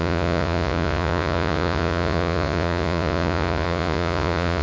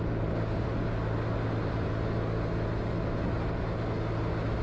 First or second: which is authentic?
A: second